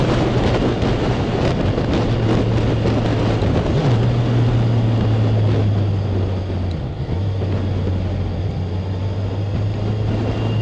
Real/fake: real